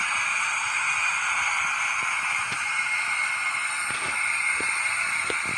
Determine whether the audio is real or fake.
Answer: real